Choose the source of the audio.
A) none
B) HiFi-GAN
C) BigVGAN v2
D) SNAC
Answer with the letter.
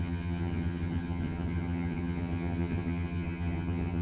B